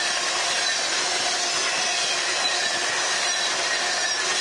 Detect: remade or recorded recorded